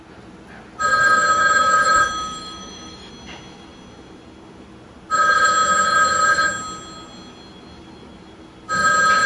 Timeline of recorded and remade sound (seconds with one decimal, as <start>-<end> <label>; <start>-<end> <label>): 0.0-0.9 recorded; 0.9-3.1 remade; 3.1-9.3 recorded